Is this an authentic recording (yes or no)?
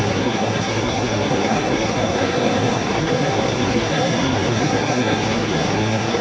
no